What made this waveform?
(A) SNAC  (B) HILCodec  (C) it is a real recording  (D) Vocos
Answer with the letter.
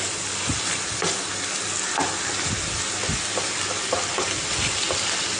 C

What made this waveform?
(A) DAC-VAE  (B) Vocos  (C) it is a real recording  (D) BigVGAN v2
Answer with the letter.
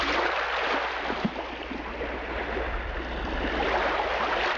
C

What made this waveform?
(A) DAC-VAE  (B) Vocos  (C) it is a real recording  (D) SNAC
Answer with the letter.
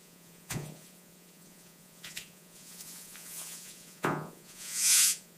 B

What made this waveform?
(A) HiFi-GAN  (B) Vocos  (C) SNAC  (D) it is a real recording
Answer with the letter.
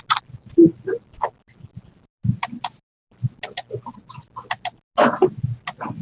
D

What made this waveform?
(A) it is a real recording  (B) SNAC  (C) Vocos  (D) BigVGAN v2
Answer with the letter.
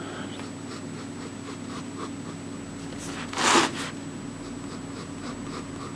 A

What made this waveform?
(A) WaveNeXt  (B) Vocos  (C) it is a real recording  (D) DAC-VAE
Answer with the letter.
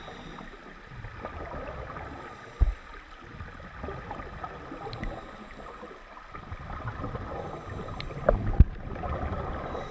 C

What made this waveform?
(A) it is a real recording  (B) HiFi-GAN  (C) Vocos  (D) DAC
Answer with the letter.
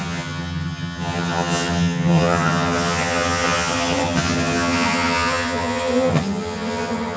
B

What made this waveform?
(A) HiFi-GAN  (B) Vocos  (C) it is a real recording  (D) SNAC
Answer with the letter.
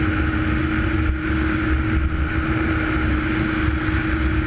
C